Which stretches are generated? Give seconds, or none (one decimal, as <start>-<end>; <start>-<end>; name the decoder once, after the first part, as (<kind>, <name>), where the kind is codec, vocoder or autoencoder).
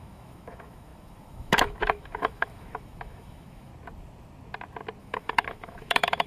0.0-3.7 (autoencoder, DAC-VAE); 5.0-6.3